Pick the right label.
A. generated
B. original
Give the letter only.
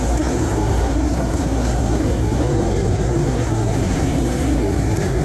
A